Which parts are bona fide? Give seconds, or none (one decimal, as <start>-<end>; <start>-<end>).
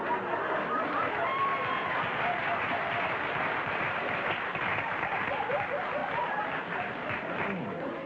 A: 0.0-8.1